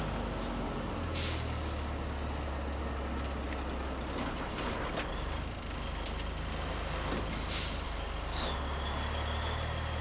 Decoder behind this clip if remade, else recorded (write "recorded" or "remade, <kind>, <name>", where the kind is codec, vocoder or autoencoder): recorded